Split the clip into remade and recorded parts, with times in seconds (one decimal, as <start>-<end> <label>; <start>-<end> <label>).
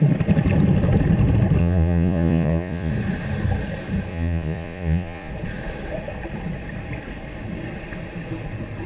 0.0-1.6 recorded; 1.6-2.9 remade; 2.9-4.1 recorded; 4.1-5.3 remade; 5.3-8.9 recorded